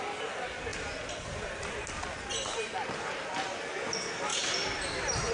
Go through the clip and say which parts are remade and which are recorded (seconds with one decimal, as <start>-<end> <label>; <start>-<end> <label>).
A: 0.0-5.3 recorded